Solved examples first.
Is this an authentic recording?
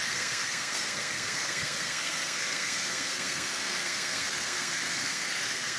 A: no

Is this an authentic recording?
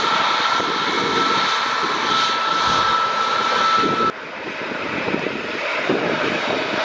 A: yes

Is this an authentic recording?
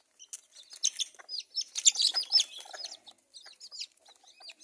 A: yes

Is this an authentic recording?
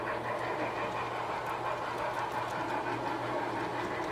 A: yes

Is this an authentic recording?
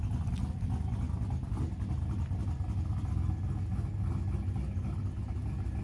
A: yes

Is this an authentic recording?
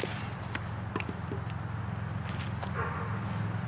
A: yes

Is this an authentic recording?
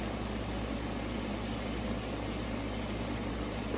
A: yes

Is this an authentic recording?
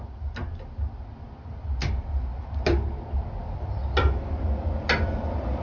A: yes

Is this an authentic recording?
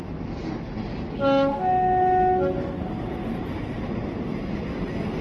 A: yes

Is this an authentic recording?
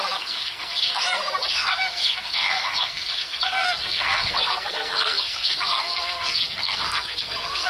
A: no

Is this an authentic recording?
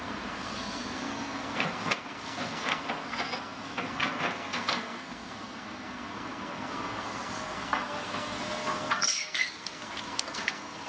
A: no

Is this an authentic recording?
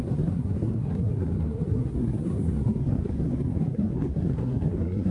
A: no